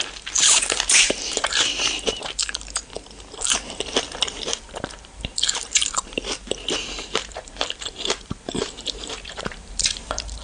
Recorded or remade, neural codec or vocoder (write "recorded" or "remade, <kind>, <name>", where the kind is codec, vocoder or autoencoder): remade, vocoder, BigVGAN v2